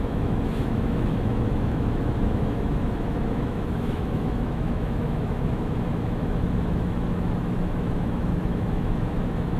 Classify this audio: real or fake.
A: fake